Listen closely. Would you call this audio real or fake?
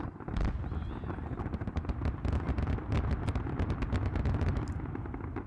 real